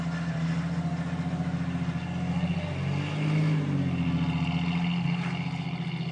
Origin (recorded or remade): recorded